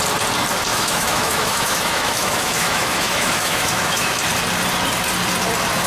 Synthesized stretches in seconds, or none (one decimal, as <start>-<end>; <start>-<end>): 0.7-4.2